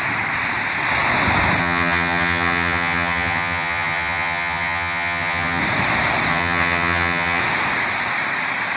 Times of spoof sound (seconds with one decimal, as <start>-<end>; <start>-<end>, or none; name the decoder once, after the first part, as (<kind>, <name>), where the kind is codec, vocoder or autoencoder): 1.6-5.6 (vocoder, HiFi-GAN); 6.3-7.4